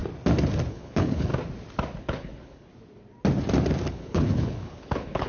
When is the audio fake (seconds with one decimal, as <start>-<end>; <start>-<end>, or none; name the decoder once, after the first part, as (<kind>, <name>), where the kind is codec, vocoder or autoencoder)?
0.7-1.3 (codec, HILCodec); 2.0-2.7; 3.9-5.3